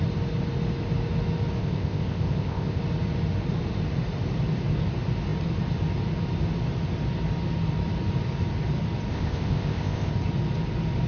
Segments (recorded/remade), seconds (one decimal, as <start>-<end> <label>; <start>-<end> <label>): 0.0-1.6 recorded; 1.6-2.8 remade; 2.8-9.1 recorded; 9.1-10.1 remade; 10.1-11.1 recorded